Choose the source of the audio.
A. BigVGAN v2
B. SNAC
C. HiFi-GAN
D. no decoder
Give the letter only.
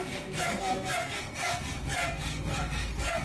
B